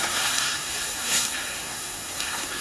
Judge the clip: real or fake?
fake